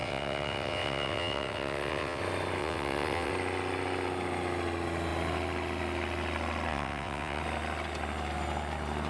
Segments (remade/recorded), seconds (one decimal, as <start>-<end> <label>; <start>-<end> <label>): 0.0-2.2 remade; 2.2-2.6 recorded; 2.6-3.3 remade; 3.3-6.7 recorded; 6.7-7.4 remade; 7.4-9.1 recorded